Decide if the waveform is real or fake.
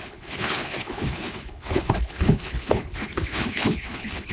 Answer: fake